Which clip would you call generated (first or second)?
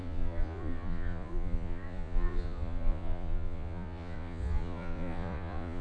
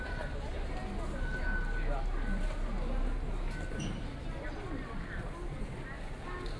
first